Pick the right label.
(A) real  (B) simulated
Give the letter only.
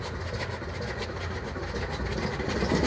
A